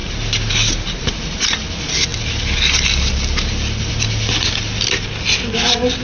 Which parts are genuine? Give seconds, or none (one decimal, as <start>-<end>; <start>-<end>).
0.0-6.0